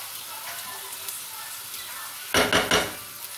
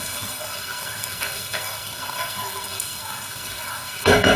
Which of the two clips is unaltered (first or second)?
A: first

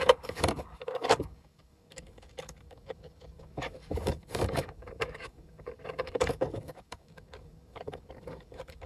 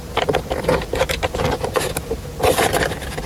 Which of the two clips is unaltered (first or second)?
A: second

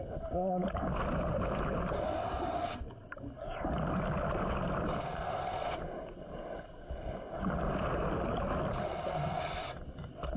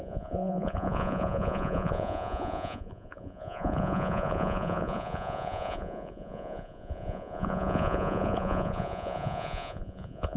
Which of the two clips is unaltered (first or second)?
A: first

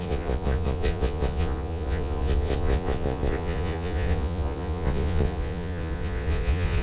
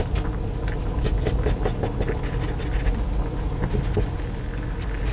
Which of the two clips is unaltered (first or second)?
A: second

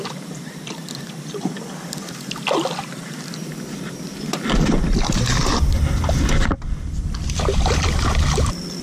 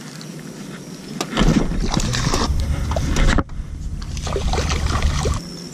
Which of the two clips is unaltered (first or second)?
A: second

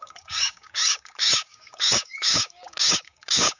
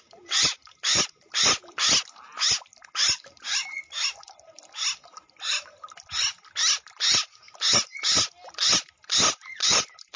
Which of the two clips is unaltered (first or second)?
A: second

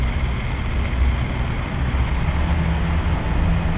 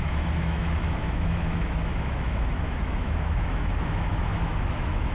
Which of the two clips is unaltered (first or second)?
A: first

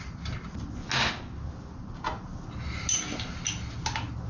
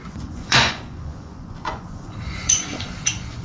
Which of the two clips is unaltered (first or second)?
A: first